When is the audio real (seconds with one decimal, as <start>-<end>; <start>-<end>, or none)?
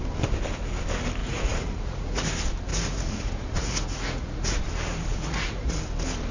0.0-1.2; 2.3-2.7; 4.6-5.1; 5.8-6.3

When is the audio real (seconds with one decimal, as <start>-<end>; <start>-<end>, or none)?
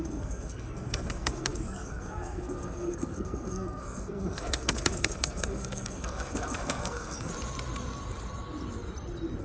7.3-9.4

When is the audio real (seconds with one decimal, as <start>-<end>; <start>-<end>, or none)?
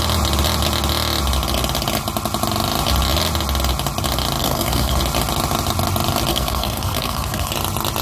0.0-4.4; 5.0-6.3; 7.5-8.0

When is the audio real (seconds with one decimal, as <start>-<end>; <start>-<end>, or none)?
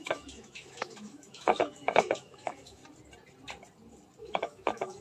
2.8-4.2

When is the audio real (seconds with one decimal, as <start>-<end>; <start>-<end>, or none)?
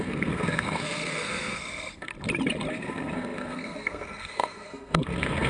2.1-2.7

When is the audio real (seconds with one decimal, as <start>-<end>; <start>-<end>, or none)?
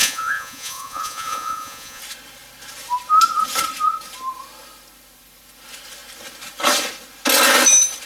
2.0-8.1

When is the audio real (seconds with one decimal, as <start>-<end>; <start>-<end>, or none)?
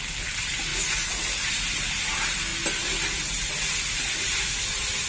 0.0-5.1